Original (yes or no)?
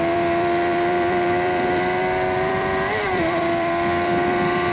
no